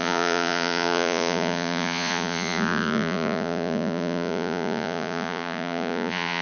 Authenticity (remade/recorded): remade